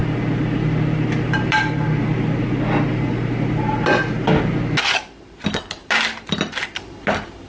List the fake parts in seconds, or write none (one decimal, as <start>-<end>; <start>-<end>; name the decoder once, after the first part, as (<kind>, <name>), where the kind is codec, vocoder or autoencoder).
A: none

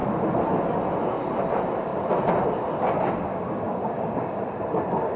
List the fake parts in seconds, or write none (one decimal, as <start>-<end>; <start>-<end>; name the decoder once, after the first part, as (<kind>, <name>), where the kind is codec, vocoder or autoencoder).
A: 3.3-4.5 (codec, DAC)

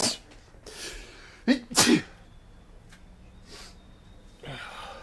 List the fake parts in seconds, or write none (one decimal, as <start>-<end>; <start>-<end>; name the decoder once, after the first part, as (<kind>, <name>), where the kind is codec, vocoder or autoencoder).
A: none

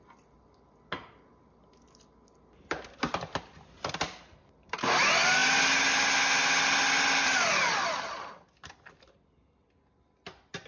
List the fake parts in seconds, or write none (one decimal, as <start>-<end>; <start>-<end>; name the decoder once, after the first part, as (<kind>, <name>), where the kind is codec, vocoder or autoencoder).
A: none

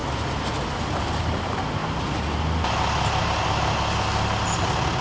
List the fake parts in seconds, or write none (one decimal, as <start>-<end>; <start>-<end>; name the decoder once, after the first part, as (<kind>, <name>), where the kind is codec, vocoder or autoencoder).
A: none

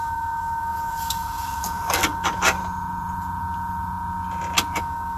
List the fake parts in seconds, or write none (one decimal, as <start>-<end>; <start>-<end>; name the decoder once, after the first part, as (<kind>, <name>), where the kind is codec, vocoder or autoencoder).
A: 0.0-2.6 (codec, DAC); 4.8-5.2

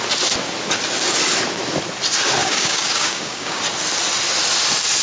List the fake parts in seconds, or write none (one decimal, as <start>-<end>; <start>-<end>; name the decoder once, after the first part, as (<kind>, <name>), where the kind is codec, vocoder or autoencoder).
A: 2.4-3.6 (codec, DAC)

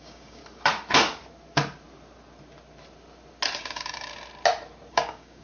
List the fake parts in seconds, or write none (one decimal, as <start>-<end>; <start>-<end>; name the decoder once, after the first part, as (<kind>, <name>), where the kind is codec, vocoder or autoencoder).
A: 0.0-0.4 (codec, DAC); 3.6-4.1; 4.9-5.4